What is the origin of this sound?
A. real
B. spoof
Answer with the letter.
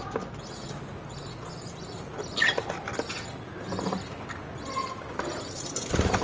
A